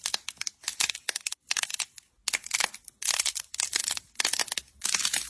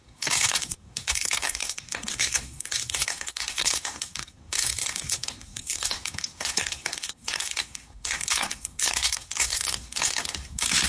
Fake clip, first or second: second